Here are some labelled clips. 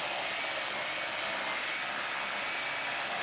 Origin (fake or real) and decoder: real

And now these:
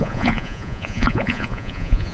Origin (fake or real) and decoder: fake, vocoder, Vocos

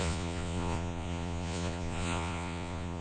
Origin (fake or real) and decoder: fake, vocoder, Vocos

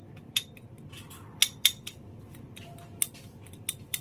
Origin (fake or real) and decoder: real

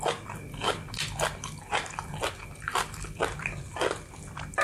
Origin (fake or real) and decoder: real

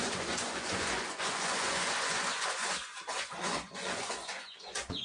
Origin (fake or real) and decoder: fake, vocoder, Vocos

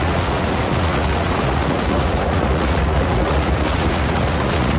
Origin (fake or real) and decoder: fake, vocoder, Vocos